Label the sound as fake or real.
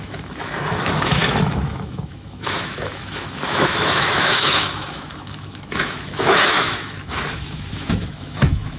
fake